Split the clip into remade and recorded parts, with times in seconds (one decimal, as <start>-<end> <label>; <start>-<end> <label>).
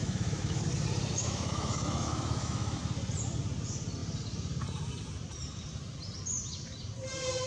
0.0-0.6 remade; 0.6-1.1 recorded; 1.1-2.8 remade; 2.8-7.5 recorded